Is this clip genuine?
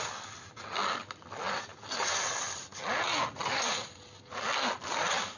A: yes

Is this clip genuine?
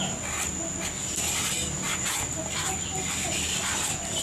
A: yes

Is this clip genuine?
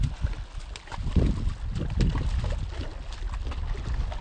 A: yes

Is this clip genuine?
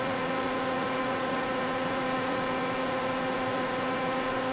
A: no